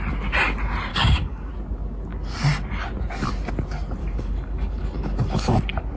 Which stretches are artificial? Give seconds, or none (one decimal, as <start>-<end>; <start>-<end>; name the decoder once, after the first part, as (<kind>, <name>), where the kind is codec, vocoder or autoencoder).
0.9-1.5 (codec, DAC); 4.0-5.6

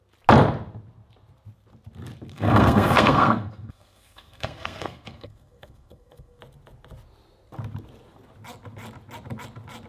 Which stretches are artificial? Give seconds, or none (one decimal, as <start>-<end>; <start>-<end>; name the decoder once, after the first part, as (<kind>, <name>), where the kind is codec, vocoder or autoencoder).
2.3-6.4 (codec, SNAC)

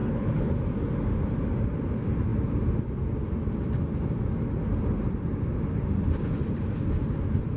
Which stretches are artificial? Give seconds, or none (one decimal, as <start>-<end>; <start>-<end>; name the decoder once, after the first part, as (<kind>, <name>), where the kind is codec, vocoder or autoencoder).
0.0-0.5 (codec, HILCodec)

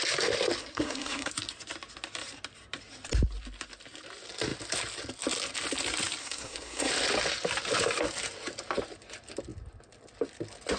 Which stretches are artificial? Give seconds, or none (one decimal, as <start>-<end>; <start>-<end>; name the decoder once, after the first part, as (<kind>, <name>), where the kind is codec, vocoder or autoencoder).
0.6-1.3 (codec, SNAC); 6.2-6.9

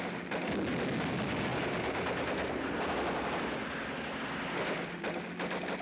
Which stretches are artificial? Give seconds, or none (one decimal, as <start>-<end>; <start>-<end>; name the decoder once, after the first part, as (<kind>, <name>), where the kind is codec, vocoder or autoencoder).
none

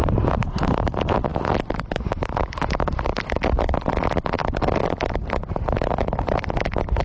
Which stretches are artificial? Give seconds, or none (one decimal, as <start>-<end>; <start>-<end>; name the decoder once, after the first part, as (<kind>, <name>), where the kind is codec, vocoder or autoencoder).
none

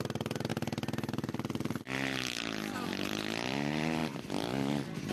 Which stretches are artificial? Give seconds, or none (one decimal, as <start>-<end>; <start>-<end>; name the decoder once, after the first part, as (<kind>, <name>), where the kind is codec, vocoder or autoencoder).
0.0-0.5 (vocoder, BigVGAN v2); 2.4-5.1